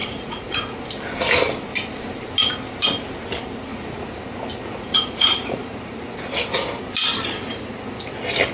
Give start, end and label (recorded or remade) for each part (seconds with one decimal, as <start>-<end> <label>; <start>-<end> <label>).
0.0-0.8 remade; 0.8-3.7 recorded; 3.7-4.2 remade; 4.2-4.7 recorded; 4.7-6.3 remade; 6.3-8.5 recorded